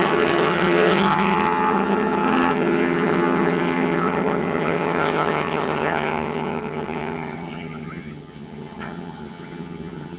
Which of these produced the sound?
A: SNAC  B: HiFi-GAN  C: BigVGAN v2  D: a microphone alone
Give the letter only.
B